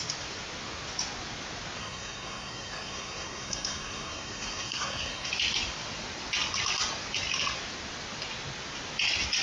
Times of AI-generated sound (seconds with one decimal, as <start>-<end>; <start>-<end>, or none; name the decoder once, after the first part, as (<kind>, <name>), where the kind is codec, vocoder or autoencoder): 1.8-5.3 (codec, SNAC)